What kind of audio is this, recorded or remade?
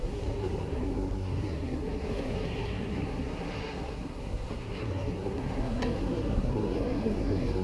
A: remade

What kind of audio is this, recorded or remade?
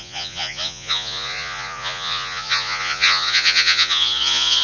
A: remade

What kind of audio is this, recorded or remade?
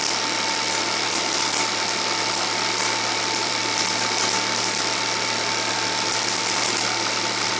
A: recorded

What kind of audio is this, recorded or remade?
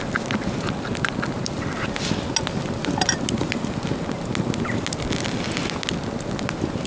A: recorded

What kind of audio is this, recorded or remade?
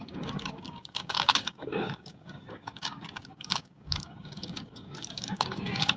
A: remade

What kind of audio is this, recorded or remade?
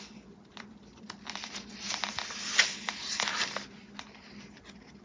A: recorded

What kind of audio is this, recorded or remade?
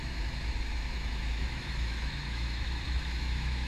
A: remade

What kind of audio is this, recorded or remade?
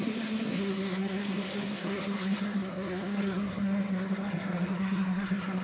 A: remade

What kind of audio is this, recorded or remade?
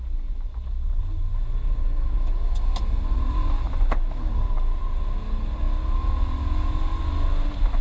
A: recorded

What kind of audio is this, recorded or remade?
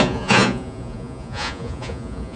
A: remade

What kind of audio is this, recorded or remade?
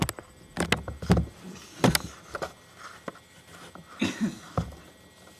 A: recorded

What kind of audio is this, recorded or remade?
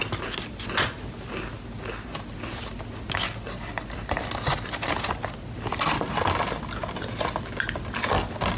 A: recorded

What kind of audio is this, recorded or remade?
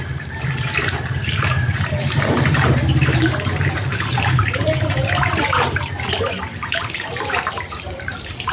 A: remade